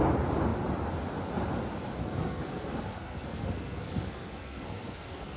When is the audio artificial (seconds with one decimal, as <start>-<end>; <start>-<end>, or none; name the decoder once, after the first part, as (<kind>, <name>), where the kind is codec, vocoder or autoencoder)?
2.0-5.4 (codec, SNAC)